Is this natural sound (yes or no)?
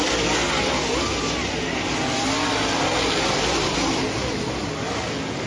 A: yes